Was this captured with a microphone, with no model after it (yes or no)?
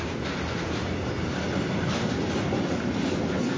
yes